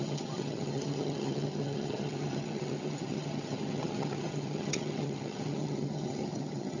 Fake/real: fake